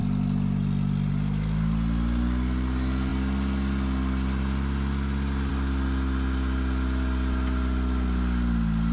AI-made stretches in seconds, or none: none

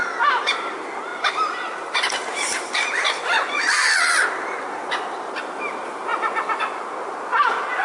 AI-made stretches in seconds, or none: 1.1-5.3 (vocoder, BigVGAN v2); 6.1-6.6; 7.3-7.8

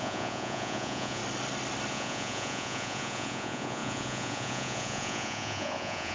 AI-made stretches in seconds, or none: 0.0-1.2 (vocoder, Vocos); 1.9-6.1

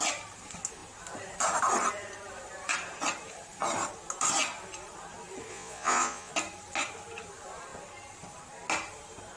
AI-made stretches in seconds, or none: 5.5-6.3 (vocoder, Vocos)

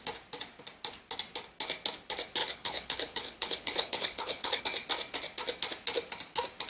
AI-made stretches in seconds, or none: 2.4-4.6 (codec, HILCodec)